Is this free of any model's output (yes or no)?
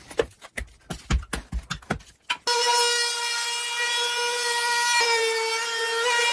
yes